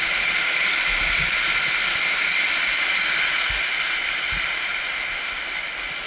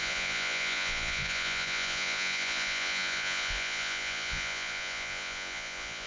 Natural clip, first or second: first